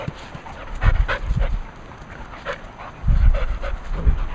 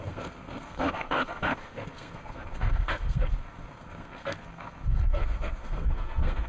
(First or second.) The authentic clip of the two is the first